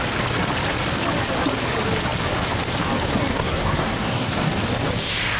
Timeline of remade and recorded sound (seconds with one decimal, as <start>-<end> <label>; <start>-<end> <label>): 0.0-3.3 recorded; 3.3-4.5 remade; 4.5-5.4 recorded